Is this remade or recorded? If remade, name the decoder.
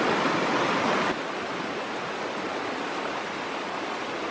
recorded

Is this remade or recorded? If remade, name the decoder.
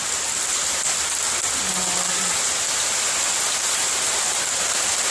recorded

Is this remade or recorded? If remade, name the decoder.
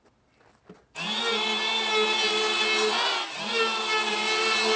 recorded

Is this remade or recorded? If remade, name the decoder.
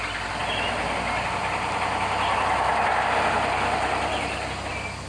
recorded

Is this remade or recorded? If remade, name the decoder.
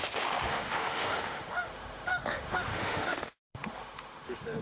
remade, autoencoder, DAC-VAE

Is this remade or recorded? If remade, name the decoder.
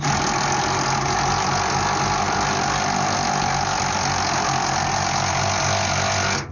recorded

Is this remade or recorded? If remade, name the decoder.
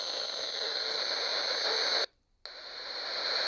recorded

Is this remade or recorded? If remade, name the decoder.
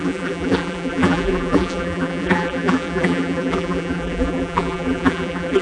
remade, vocoder, BigVGAN v2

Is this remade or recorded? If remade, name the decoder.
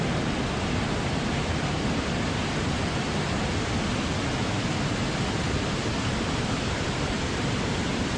recorded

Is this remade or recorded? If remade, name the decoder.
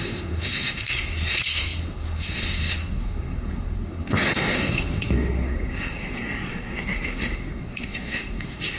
remade, codec, SNAC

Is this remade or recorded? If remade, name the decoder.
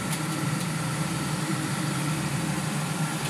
remade, vocoder, BigVGAN v2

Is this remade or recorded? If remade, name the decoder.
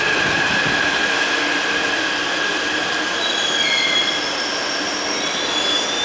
remade, vocoder, BigVGAN v2